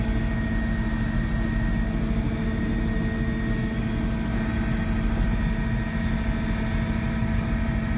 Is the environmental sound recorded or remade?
recorded